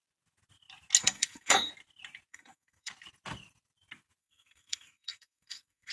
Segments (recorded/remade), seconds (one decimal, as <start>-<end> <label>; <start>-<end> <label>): 0.0-1.0 recorded; 1.0-1.7 remade; 1.7-2.3 recorded; 2.3-2.9 remade; 2.9-4.2 recorded; 4.2-5.9 remade

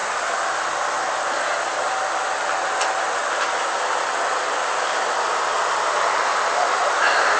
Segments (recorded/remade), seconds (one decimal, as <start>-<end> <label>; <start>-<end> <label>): 0.0-7.4 recorded

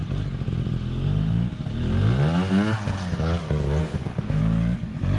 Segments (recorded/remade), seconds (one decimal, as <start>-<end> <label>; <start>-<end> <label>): 0.0-3.8 recorded; 3.8-4.4 remade; 4.4-5.2 recorded

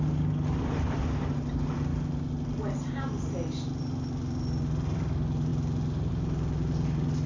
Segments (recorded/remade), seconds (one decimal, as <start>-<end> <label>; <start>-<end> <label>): 0.0-7.3 recorded

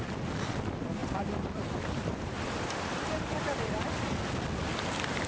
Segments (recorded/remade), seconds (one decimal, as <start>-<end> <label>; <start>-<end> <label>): 0.0-1.0 recorded; 1.0-4.2 remade; 4.2-5.3 recorded